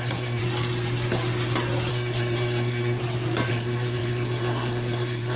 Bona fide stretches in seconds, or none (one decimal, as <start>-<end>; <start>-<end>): 0.4-1.9; 3.0-3.5